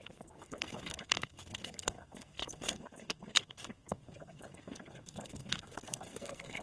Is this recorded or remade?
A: remade